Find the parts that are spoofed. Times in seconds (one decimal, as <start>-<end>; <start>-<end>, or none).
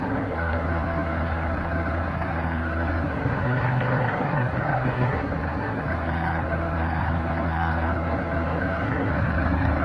0.0-9.8